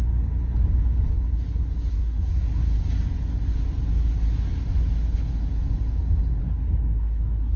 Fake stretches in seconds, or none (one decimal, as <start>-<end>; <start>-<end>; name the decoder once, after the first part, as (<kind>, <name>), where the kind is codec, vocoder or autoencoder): 1.9-2.8 (codec, SNAC); 6.4-7.6